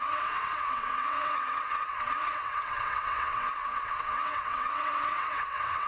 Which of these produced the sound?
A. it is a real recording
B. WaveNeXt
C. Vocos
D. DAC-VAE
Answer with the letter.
B